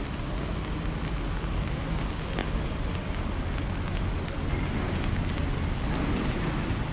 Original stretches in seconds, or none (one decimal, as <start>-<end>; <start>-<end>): 0.0-6.9